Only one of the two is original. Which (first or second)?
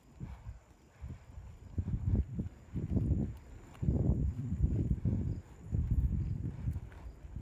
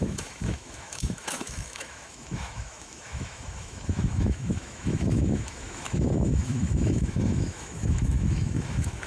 first